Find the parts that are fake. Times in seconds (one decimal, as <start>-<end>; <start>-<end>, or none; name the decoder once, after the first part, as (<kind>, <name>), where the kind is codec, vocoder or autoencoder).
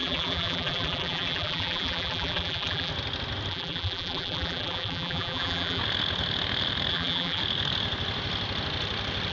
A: 0.0-2.9 (vocoder, BigVGAN v2); 3.5-5.8; 6.9-7.4